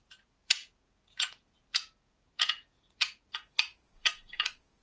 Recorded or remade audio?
remade